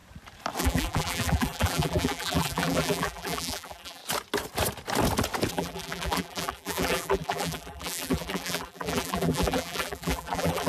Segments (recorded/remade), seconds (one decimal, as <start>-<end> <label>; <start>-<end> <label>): 0.0-0.6 recorded; 0.6-4.0 remade; 4.0-5.5 recorded; 5.5-10.7 remade